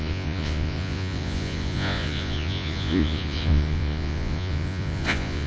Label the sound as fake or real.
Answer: fake